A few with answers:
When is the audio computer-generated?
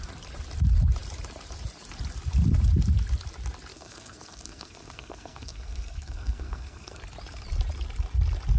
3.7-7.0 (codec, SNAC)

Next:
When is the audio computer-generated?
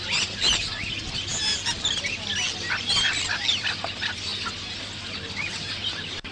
none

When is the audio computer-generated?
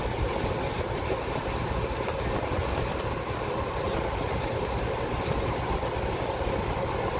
none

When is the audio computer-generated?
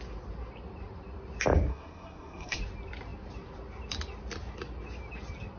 1.7-2.6 (codec, SNAC)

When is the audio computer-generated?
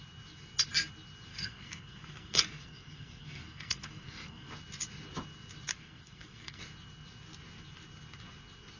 1.3-4.5 (codec, SNAC); 5.7-6.6